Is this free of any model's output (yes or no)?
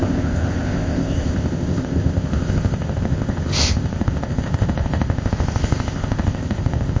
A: no